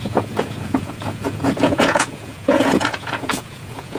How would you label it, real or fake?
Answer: fake